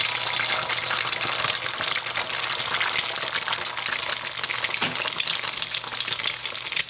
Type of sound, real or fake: real